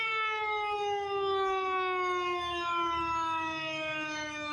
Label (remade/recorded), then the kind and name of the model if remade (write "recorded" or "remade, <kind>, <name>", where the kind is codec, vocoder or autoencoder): remade, autoencoder, DAC-VAE